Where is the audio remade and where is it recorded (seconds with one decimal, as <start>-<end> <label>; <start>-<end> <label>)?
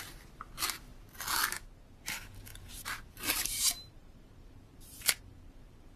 0.0-2.5 recorded; 2.5-6.0 remade